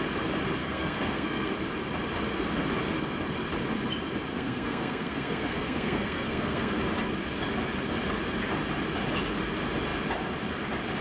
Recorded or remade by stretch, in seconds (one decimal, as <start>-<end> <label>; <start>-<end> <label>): 0.0-0.6 recorded; 0.6-1.5 remade; 1.5-4.3 recorded; 4.3-6.8 remade; 6.8-11.0 recorded